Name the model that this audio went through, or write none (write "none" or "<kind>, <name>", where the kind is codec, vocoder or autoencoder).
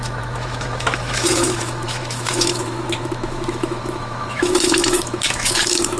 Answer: autoencoder, DAC-VAE